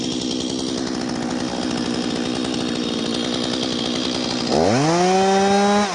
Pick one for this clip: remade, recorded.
recorded